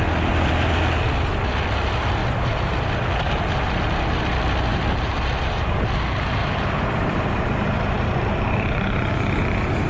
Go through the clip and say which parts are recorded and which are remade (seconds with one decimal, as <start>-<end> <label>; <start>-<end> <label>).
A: 0.0-4.7 recorded; 4.7-5.9 remade; 5.9-6.4 recorded; 6.4-9.1 remade; 9.1-9.9 recorded